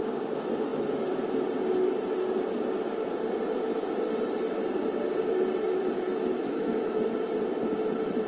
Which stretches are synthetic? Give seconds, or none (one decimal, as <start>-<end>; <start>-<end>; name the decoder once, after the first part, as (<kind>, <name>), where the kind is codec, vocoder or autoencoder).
6.4-7.0 (autoencoder, DAC-VAE)